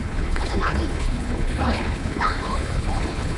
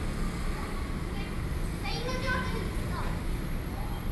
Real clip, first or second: second